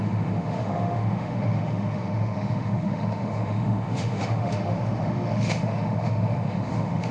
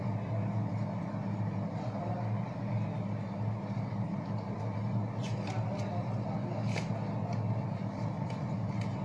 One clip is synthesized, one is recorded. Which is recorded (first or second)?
second